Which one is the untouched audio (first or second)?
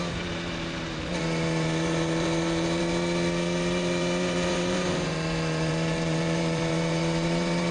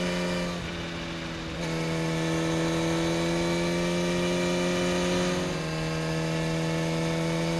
second